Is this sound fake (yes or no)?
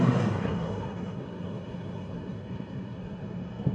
yes